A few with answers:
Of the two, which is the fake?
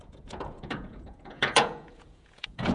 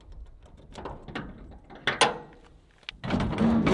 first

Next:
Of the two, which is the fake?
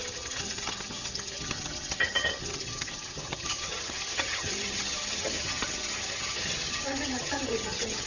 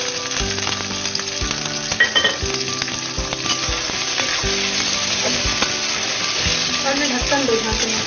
first